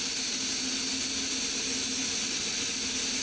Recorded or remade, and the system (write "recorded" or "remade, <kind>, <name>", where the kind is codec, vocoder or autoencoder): recorded